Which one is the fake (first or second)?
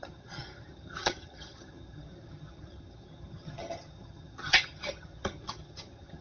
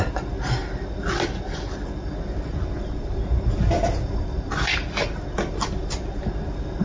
first